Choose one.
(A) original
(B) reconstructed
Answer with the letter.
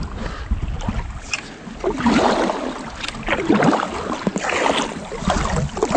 A